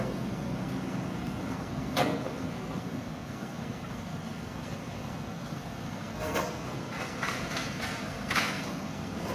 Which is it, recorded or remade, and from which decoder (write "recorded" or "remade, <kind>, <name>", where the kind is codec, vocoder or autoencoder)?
remade, codec, SNAC